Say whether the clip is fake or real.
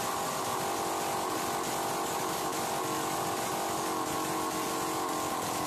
real